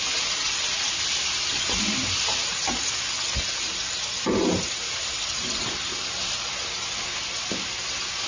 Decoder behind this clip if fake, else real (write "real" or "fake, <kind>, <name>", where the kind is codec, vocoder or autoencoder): real